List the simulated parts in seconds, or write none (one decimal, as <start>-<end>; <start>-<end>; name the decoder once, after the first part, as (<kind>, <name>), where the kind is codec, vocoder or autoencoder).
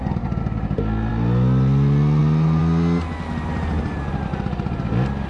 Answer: none